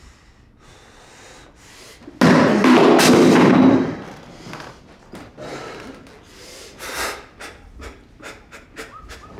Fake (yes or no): no